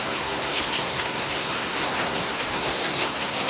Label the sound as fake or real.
fake